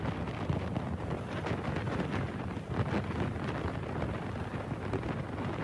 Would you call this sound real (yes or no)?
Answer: yes